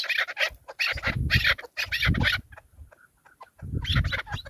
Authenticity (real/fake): real